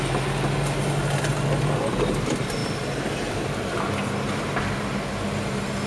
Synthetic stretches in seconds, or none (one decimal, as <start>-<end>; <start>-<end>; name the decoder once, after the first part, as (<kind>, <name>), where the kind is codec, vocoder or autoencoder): none